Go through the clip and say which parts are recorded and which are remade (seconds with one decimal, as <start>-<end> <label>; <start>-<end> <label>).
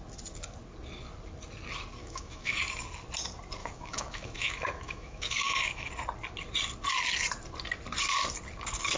0.0-2.0 recorded; 2.0-2.6 remade; 2.6-3.6 recorded; 3.6-5.9 remade; 5.9-9.0 recorded